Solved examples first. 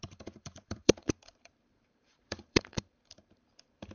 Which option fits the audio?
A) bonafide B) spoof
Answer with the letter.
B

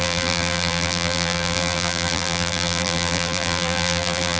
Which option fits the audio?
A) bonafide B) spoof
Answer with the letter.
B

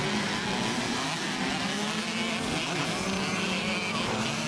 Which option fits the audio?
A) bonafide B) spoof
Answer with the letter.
A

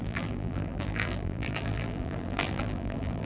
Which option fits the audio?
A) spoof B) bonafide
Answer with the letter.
A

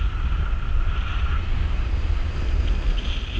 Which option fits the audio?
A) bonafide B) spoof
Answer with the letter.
A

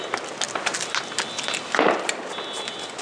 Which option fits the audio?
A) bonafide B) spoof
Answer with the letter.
A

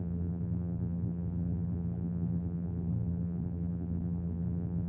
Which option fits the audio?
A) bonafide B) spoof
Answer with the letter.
B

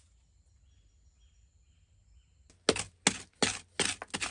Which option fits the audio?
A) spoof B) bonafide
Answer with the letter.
B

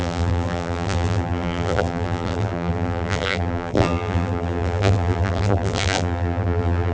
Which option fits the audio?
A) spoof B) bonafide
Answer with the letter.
A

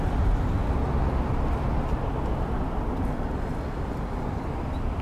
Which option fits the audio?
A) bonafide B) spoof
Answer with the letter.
A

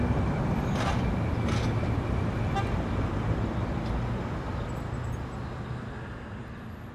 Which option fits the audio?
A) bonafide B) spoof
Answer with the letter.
A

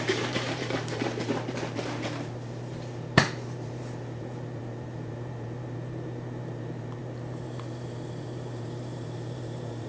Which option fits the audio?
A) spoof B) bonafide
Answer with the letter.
A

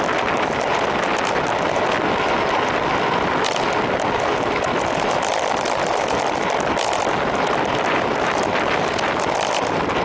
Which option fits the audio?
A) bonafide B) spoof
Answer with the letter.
A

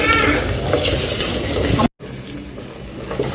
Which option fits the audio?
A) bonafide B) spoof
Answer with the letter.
A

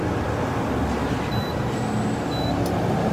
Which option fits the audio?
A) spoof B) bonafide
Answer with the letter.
B